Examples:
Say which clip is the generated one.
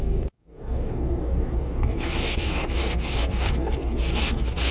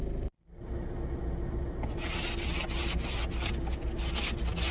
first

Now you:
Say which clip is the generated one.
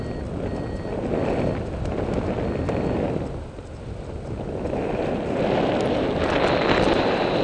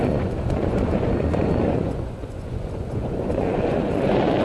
second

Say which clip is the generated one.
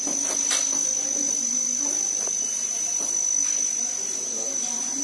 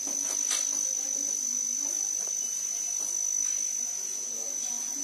first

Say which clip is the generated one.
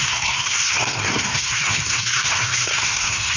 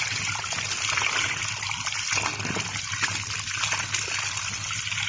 first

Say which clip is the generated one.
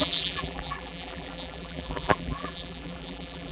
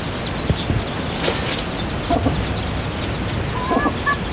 first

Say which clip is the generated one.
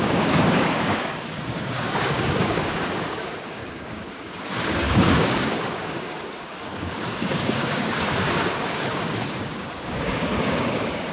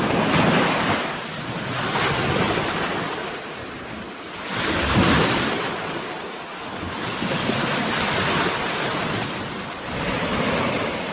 first